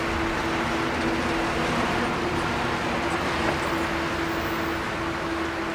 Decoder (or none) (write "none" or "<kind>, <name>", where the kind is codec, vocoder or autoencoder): none